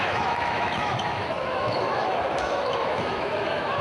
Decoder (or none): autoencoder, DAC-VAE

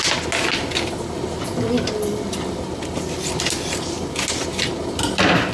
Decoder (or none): none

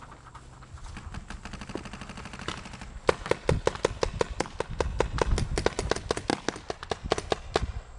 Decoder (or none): none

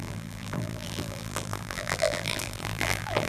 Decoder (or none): vocoder, BigVGAN v2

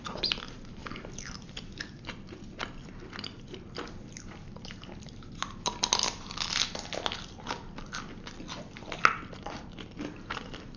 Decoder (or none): none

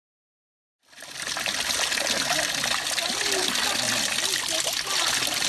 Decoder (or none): none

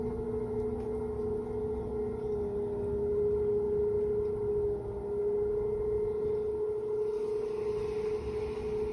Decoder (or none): none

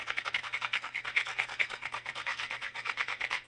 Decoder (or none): codec, SNAC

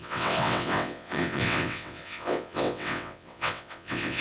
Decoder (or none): vocoder, WaveNeXt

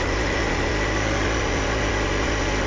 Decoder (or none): none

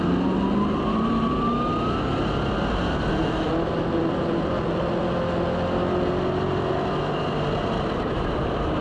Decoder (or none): none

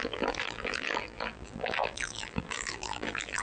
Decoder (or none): vocoder, BigVGAN v2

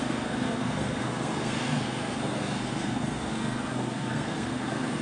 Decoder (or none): codec, SNAC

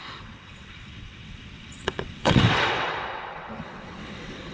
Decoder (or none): vocoder, WaveNeXt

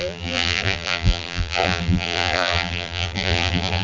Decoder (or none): vocoder, BigVGAN v2